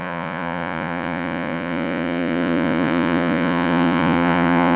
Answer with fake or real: fake